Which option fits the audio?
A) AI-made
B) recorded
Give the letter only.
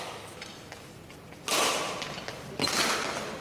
B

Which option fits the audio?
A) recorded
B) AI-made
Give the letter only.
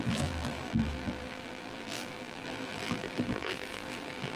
B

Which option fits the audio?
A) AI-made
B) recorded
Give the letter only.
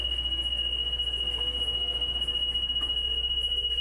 B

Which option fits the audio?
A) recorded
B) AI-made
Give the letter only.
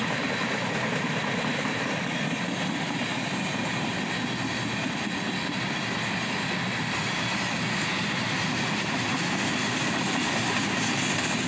A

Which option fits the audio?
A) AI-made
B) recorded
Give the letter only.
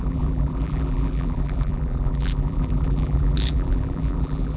A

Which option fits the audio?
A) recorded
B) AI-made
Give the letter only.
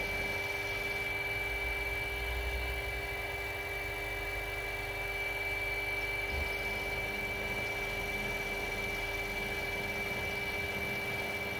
A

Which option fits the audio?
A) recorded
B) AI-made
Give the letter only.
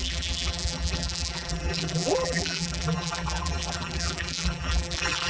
B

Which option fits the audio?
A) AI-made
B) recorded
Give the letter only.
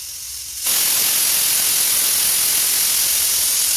B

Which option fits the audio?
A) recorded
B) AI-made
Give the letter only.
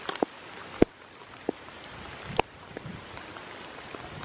A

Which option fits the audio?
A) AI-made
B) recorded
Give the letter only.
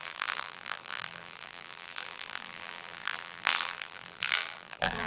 A